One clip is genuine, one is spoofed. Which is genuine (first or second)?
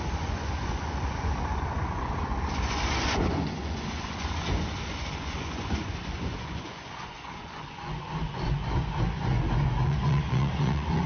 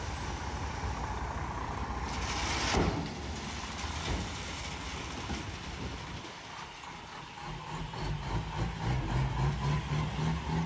second